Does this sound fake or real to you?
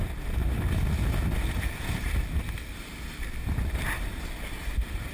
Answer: fake